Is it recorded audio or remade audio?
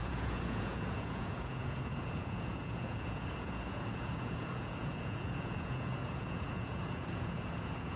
remade